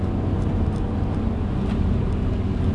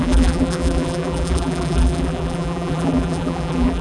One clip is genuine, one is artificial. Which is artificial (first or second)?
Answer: second